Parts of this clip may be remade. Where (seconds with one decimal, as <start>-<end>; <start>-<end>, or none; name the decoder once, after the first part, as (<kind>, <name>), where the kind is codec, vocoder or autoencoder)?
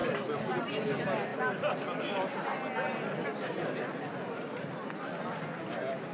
0.0-0.9 (vocoder, BigVGAN v2)